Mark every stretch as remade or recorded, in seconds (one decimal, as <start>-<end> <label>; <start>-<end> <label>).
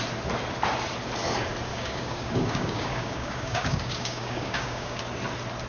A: 0.0-1.7 recorded; 1.7-5.0 remade; 5.0-5.7 recorded